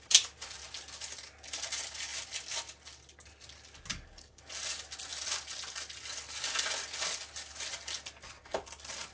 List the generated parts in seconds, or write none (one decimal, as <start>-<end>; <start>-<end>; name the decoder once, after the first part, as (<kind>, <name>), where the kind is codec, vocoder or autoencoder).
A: 3.9-4.5 (codec, DAC)